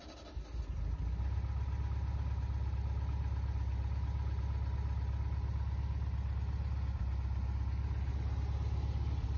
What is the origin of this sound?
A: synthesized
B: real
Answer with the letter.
B